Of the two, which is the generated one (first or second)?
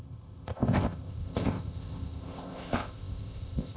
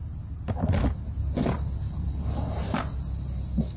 first